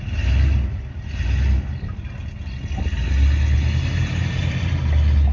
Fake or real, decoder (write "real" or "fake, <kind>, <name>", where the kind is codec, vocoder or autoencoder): real